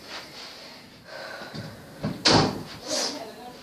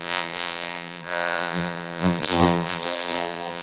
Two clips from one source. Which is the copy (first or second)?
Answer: second